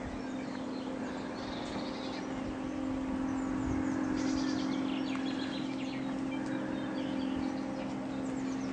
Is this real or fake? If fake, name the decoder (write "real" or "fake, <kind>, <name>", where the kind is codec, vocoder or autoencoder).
real